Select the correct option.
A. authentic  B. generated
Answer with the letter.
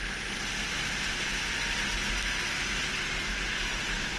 A